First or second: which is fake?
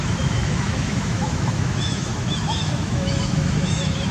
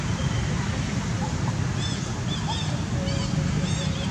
first